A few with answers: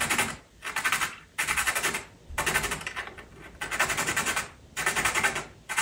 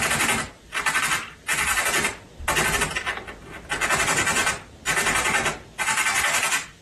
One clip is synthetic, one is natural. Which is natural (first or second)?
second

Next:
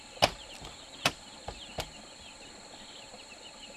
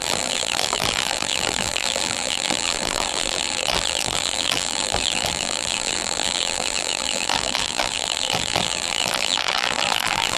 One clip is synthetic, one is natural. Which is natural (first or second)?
first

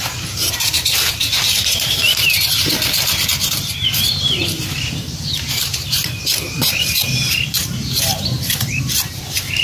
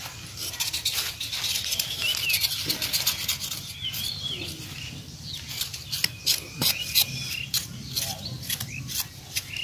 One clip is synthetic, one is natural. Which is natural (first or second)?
second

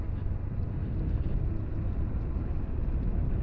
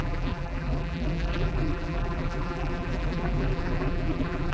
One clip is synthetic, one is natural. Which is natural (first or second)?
first